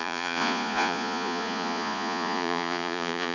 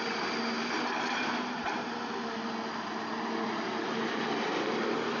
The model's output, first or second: first